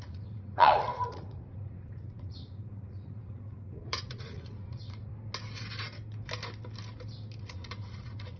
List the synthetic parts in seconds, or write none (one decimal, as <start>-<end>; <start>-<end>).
0.0-5.1; 7.4-8.4